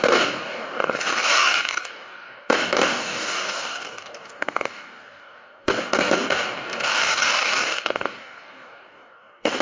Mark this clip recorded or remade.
remade